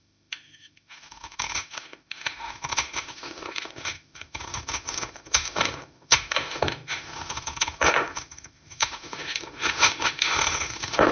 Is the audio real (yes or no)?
no